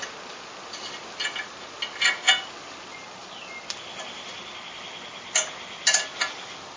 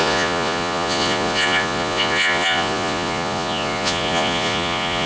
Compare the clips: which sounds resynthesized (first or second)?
second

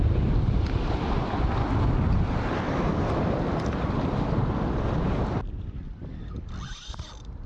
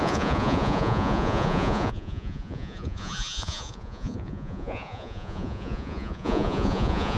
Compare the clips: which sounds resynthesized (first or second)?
second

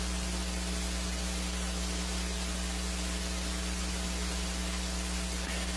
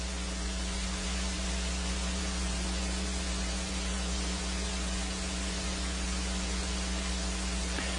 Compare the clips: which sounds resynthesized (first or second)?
second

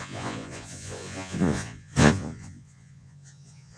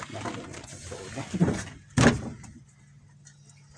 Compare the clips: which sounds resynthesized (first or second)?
first